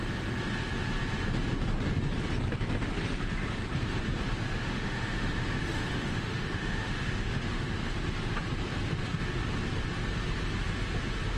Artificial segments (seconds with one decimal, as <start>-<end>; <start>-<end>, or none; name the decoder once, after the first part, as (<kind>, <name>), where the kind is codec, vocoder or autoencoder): 4.6-7.7 (autoencoder, DAC-VAE)